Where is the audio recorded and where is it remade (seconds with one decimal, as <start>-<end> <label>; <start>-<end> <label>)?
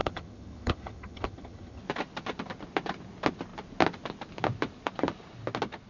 0.0-1.8 remade; 1.8-5.9 recorded